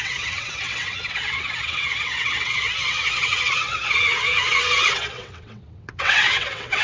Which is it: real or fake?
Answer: fake